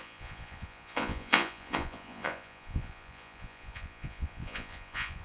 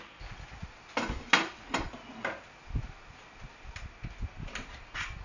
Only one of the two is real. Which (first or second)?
second